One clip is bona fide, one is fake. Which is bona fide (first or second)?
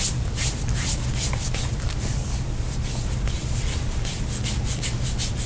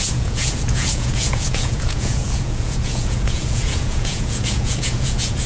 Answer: first